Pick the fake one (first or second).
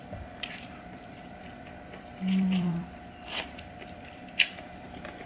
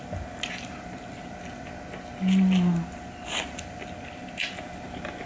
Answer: first